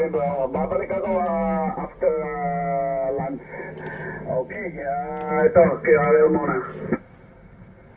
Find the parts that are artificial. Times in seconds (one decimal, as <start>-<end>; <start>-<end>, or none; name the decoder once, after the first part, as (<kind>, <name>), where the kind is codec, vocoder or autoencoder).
none